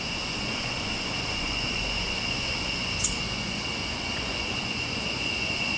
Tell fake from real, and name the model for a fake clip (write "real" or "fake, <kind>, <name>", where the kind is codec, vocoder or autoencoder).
fake, vocoder, Vocos